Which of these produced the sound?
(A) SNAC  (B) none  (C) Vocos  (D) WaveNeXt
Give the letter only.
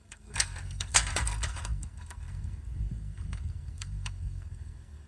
A